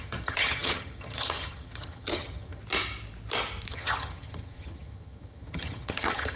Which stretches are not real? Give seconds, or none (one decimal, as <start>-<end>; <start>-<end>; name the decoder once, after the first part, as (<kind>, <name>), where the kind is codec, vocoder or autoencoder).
0.0-2.6 (vocoder, HiFi-GAN); 3.7-6.4